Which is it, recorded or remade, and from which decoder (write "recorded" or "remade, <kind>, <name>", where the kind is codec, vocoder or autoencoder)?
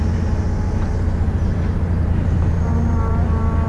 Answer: recorded